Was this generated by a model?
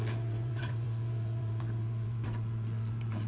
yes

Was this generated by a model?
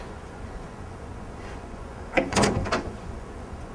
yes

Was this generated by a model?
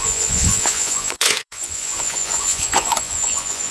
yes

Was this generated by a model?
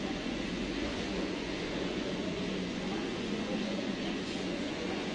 yes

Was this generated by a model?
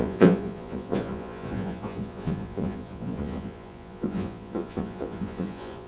yes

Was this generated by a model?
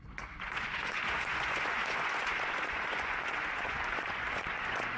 yes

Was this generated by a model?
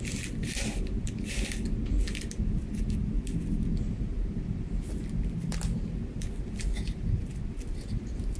no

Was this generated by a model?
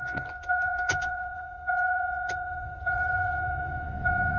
yes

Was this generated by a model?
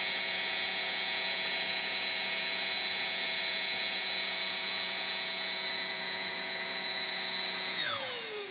yes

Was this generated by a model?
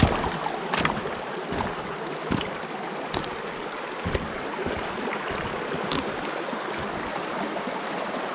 no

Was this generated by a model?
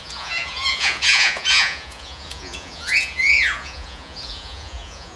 yes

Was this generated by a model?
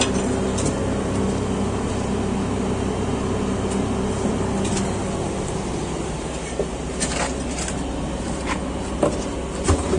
no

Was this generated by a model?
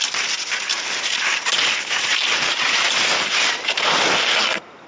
no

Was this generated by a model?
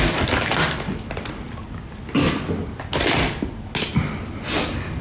no